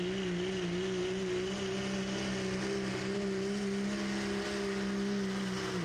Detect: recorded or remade recorded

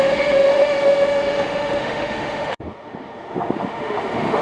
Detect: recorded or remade remade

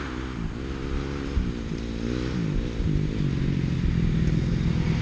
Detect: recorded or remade recorded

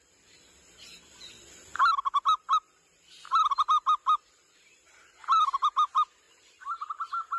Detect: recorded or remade recorded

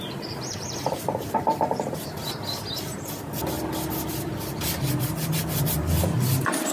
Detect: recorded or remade recorded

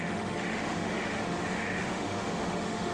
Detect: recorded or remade remade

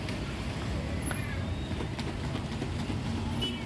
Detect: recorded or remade recorded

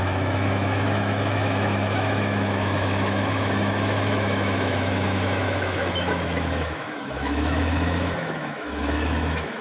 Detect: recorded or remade remade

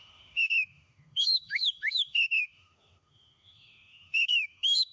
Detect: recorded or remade remade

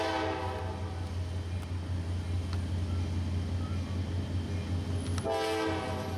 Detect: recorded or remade recorded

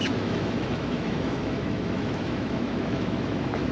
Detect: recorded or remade remade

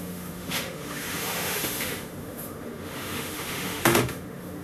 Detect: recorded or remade remade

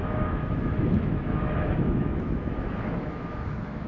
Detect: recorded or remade remade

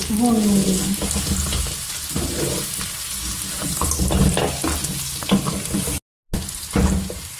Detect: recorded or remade recorded